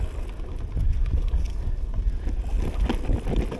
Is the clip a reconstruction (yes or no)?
no